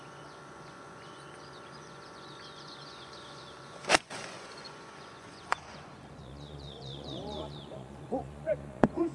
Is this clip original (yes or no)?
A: no